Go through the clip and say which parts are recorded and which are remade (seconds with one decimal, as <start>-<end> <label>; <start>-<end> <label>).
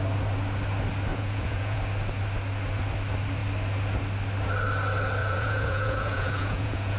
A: 0.0-1.1 recorded; 1.1-1.8 remade; 1.8-5.2 recorded; 5.2-7.0 remade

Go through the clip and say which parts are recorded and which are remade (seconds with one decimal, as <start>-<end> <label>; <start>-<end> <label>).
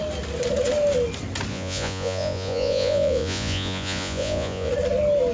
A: 0.0-1.5 recorded; 1.5-4.7 remade; 4.7-5.3 recorded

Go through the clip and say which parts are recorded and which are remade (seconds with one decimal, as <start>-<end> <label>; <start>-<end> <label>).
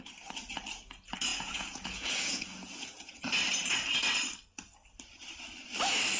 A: 0.0-1.3 recorded; 1.3-3.2 remade; 3.2-6.2 recorded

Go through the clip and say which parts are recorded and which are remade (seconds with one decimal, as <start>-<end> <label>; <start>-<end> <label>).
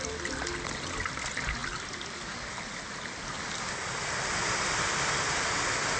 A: 0.0-6.0 recorded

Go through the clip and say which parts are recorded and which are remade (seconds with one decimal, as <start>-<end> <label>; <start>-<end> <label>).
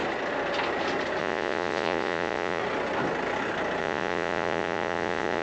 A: 0.0-1.2 recorded; 1.2-2.6 remade; 2.6-3.8 recorded; 3.8-5.4 remade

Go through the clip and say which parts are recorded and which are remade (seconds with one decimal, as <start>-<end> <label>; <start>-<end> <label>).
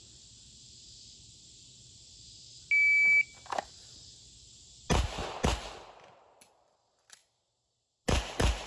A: 0.0-8.7 recorded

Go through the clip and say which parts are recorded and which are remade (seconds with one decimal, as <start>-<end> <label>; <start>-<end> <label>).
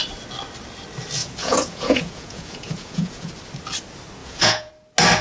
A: 0.0-1.2 recorded; 1.2-3.3 remade; 3.3-4.2 recorded; 4.2-4.7 remade; 4.7-5.2 recorded